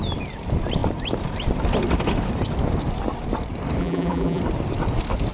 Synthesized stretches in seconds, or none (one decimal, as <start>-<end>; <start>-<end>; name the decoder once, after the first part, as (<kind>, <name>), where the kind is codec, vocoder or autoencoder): 3.8-4.4 (vocoder, BigVGAN v2)